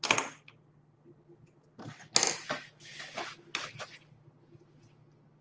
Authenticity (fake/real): real